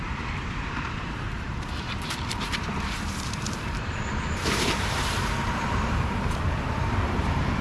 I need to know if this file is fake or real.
fake